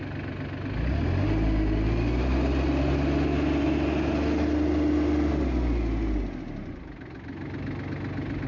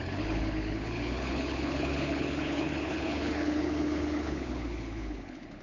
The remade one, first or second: second